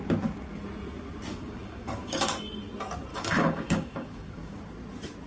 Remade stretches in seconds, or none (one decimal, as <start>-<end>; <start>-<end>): 1.3-2.3; 3.1-4.6